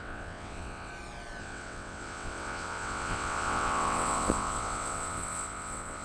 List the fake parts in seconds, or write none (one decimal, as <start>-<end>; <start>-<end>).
0.0-0.9; 1.4-6.0